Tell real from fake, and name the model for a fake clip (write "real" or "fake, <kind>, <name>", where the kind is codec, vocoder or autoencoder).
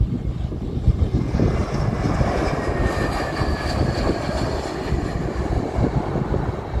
real